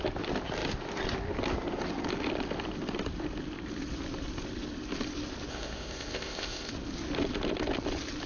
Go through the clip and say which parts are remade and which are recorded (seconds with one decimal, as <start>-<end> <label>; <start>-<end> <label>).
0.0-5.5 recorded; 5.5-6.7 remade; 6.7-8.3 recorded